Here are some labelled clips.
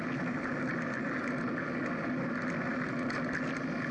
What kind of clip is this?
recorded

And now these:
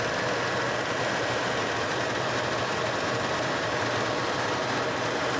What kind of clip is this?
remade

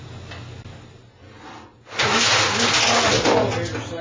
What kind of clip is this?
recorded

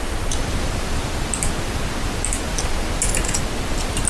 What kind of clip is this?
recorded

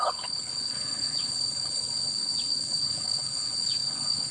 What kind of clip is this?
remade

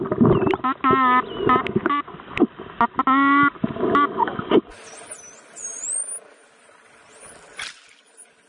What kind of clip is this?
recorded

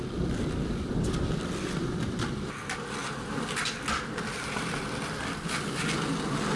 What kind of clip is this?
recorded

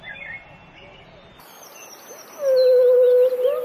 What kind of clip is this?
recorded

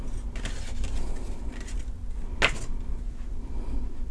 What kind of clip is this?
recorded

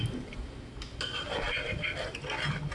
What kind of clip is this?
recorded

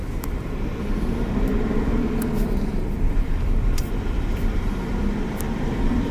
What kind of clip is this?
remade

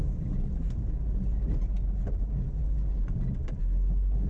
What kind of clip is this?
recorded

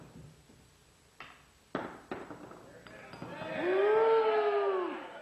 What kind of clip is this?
recorded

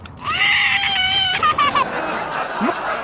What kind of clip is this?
remade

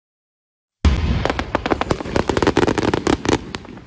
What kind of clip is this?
recorded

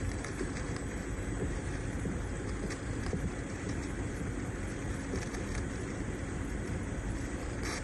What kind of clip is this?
remade